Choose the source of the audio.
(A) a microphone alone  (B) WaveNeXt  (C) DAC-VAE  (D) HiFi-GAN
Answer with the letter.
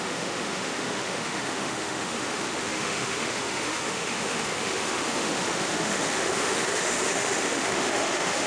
C